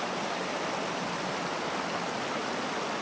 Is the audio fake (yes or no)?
no